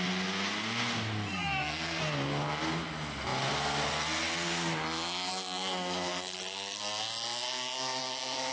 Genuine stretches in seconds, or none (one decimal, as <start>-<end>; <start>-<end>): 0.0-1.3; 2.0-5.3; 6.8-8.5